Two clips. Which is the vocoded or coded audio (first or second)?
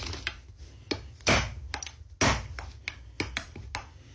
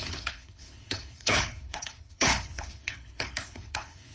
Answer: second